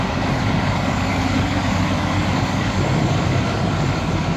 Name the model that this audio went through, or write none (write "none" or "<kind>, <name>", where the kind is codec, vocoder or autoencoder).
codec, DAC